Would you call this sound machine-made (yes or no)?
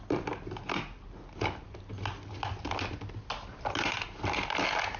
no